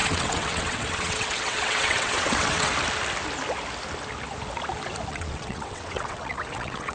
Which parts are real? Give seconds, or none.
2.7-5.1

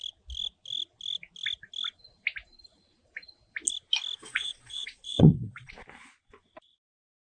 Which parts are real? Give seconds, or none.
0.0-4.2; 5.7-7.3

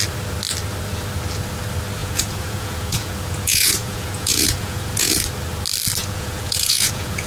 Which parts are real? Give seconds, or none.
0.0-2.0; 5.2-6.0

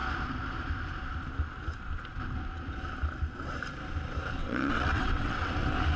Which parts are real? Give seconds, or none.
0.0-4.4; 5.5-6.0

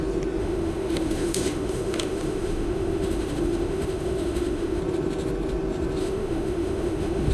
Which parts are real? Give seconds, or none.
0.0-0.4; 4.8-6.0

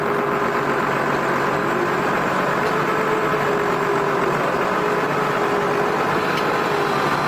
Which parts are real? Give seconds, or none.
0.0-7.3

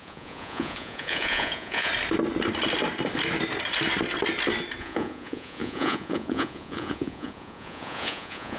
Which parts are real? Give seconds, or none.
1.9-4.8